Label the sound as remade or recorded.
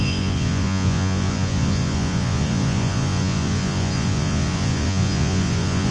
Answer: remade